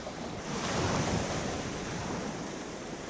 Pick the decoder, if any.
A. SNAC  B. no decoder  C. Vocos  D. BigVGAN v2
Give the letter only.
D